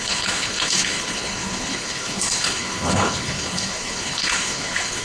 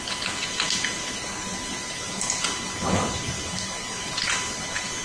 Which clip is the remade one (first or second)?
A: first